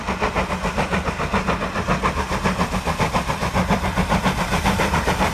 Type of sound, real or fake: real